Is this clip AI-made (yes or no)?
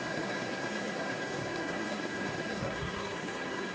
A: yes